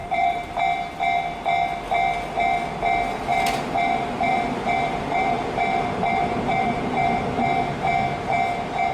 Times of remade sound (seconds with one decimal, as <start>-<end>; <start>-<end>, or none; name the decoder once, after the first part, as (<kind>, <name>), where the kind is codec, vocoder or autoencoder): 0.0-0.6 (vocoder, BigVGAN v2); 3.3-7.3